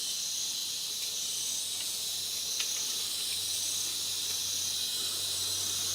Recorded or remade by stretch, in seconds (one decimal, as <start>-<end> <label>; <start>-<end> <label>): 0.0-0.6 recorded; 0.6-1.6 remade; 1.6-5.9 recorded